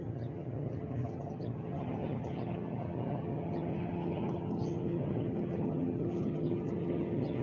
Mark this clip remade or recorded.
remade